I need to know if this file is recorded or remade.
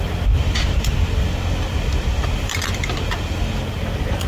recorded